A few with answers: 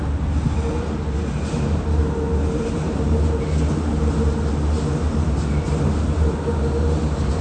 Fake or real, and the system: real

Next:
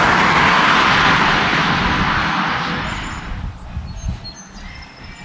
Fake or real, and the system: real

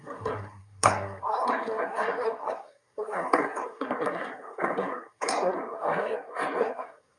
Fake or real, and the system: fake, codec, SNAC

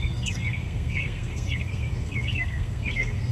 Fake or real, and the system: fake, codec, SNAC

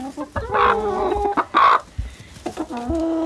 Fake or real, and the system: real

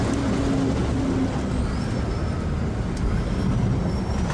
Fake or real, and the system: real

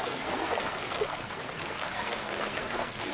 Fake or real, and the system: fake, codec, SNAC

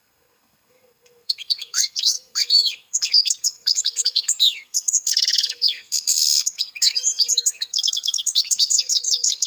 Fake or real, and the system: fake, codec, SNAC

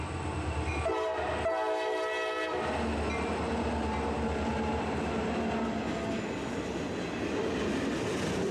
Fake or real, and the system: real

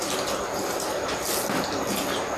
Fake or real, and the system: real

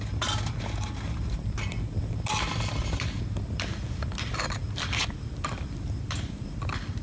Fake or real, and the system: real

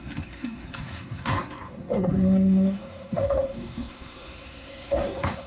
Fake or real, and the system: fake, codec, SNAC